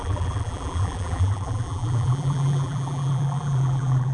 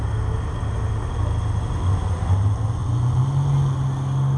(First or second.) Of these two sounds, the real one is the second